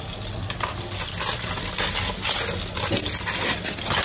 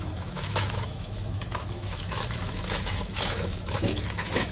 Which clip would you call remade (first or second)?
second